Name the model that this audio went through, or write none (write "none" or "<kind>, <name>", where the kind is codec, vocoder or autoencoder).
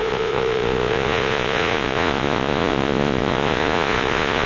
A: vocoder, Vocos